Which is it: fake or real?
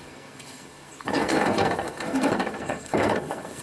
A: fake